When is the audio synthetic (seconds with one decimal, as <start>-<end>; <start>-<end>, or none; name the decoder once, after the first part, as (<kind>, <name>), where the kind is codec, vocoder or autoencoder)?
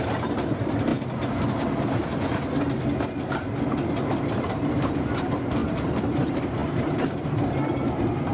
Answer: 0.0-0.9 (vocoder, BigVGAN v2); 4.2-5.6; 6.1-8.3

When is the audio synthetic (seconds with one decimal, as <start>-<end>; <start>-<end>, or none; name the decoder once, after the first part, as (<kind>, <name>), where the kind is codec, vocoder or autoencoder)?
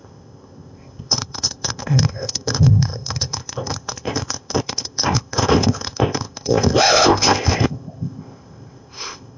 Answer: 0.0-9.4 (codec, ZipCodec)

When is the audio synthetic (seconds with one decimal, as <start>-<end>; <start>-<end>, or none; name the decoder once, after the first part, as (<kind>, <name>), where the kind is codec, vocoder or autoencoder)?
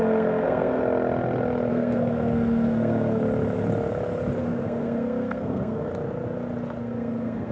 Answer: 0.0-0.8 (codec, SNAC); 1.7-3.2; 4.4-5.9; 6.8-7.5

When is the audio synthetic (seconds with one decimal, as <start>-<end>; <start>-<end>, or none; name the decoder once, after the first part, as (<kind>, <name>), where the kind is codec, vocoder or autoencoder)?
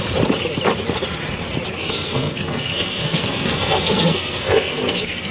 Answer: 1.8-5.3 (codec, SNAC)